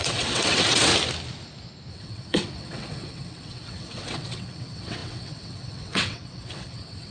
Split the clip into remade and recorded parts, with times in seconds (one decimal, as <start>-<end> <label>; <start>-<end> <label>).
0.0-0.9 remade; 0.9-1.9 recorded; 1.9-7.1 remade